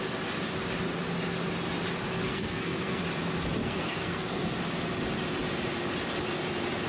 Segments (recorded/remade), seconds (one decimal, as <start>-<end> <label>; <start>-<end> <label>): 0.0-2.3 recorded; 2.3-3.0 remade; 3.0-3.6 recorded; 3.6-4.6 remade; 4.6-6.9 recorded